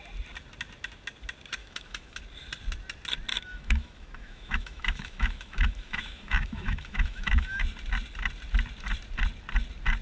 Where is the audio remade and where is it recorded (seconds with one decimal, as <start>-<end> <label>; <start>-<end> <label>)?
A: 0.0-1.6 recorded; 1.6-2.2 remade; 2.2-3.3 recorded; 3.3-7.6 remade; 7.6-10.0 recorded